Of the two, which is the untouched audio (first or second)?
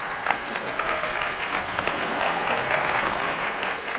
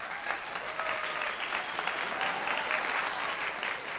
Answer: second